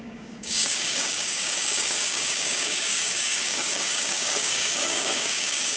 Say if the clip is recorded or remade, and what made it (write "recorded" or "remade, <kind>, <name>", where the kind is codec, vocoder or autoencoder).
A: remade, codec, DAC